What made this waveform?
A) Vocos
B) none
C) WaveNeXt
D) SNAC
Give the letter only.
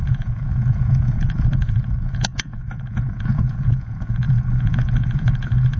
A